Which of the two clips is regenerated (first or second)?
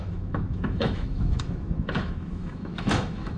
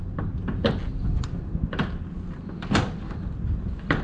first